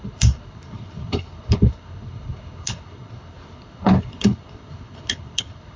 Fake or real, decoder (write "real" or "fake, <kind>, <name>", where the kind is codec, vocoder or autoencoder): fake, codec, HILCodec